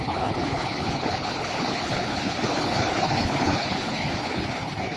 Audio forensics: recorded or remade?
remade